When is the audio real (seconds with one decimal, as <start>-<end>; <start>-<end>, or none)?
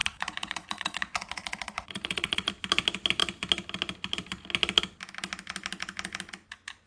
2.5-6.9